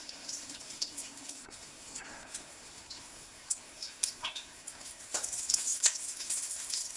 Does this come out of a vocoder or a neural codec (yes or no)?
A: yes